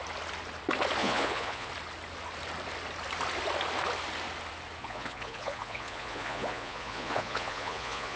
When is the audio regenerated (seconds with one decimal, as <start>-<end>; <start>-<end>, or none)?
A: 1.0-1.7; 4.8-8.2